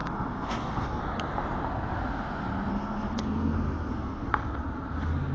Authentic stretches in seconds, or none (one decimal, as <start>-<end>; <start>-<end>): 1.0-2.7; 4.3-5.3